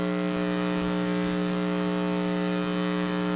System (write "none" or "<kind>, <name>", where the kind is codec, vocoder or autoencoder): autoencoder, DAC-VAE